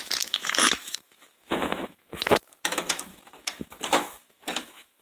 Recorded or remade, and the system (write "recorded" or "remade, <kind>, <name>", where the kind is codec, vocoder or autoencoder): remade, autoencoder, DAC-VAE